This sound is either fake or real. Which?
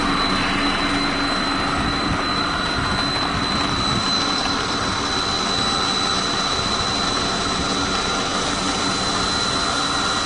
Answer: real